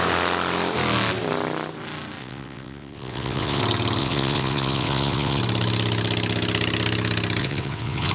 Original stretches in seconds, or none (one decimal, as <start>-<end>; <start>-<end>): 0.0-2.2; 3.6-4.0; 5.4-7.4